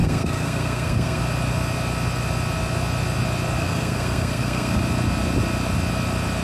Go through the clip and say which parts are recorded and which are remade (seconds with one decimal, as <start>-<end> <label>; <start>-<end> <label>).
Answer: 0.0-1.2 remade; 1.2-3.6 recorded; 3.6-4.8 remade; 4.8-6.4 recorded